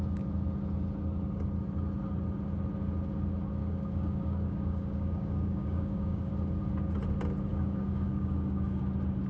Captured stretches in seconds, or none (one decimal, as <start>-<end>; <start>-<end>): 0.0-3.6; 6.3-7.5; 8.8-9.3